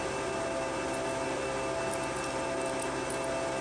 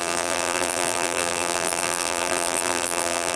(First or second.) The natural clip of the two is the first